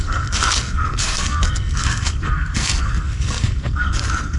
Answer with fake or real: fake